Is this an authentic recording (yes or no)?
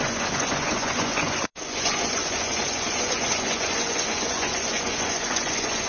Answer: no